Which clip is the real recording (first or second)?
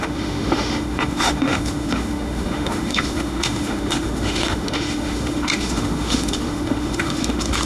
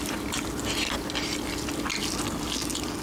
second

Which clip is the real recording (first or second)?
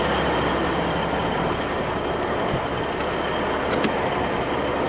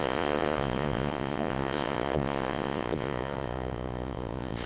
first